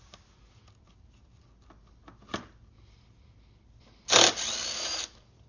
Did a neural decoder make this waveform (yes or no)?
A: no